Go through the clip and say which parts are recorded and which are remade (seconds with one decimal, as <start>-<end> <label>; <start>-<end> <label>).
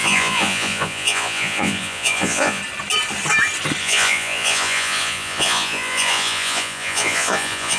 0.0-2.6 remade; 2.6-3.8 recorded; 3.8-7.8 remade